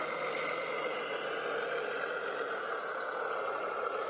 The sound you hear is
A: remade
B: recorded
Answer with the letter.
B